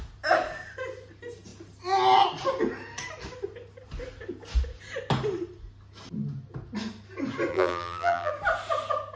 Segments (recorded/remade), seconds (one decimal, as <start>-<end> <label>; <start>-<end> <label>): 0.0-7.5 recorded; 7.5-8.3 remade; 8.3-9.2 recorded